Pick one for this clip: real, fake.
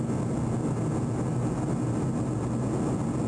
real